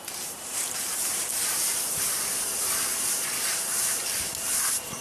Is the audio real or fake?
fake